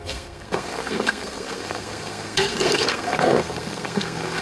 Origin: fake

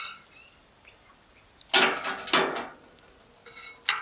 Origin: real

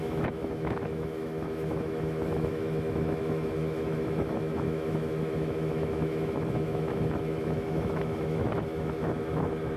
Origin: fake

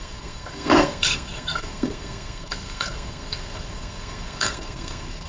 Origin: fake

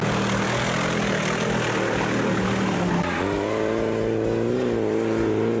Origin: real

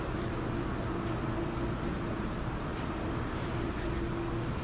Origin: real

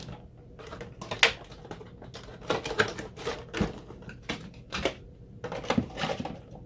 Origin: real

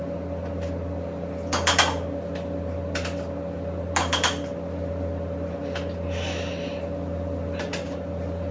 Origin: real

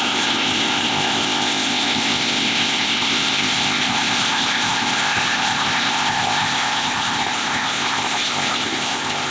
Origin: fake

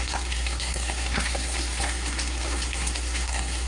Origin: fake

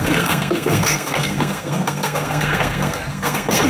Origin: fake